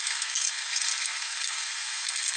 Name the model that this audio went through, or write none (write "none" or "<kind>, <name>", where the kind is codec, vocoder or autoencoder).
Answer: codec, SNAC